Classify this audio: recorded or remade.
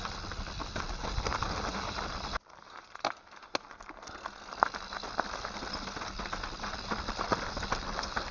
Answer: recorded